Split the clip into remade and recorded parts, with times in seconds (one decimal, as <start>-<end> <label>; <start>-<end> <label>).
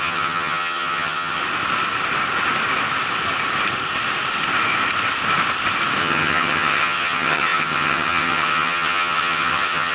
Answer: 0.0-1.4 remade; 1.4-6.0 recorded; 6.0-9.9 remade